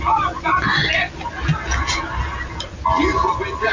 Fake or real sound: real